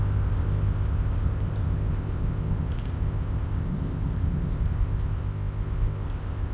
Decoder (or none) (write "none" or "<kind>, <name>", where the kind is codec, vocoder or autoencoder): codec, ZipCodec